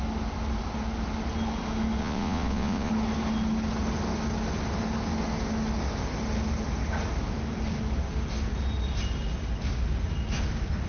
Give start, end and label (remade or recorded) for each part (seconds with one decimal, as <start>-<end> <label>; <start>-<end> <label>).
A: 0.0-2.0 recorded; 2.0-2.9 remade; 2.9-10.9 recorded